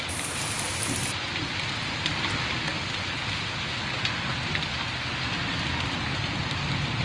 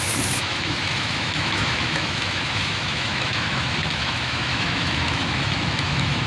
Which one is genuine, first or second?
first